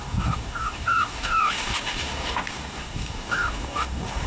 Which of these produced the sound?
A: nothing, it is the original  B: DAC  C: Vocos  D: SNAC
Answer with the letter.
B